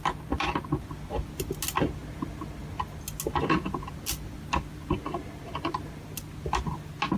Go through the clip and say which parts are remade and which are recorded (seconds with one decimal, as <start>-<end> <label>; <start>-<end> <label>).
0.0-7.2 recorded